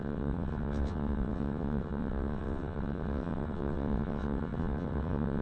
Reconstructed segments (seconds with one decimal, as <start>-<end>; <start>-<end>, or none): 0.0-5.4